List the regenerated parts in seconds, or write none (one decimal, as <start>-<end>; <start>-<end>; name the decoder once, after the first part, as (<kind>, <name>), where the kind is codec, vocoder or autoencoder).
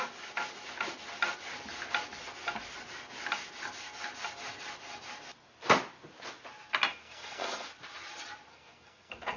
6.9-7.7 (codec, SNAC); 8.5-9.4